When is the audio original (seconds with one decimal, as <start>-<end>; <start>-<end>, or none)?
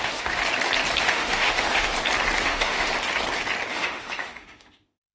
0.4-1.0; 1.9-2.4; 2.9-3.7